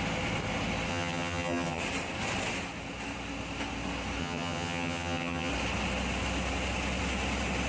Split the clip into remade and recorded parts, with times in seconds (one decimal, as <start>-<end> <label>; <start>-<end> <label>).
0.0-0.9 recorded; 0.9-1.8 remade; 1.8-4.2 recorded; 4.2-5.5 remade; 5.5-7.7 recorded